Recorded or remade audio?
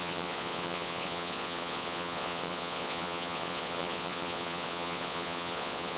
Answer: remade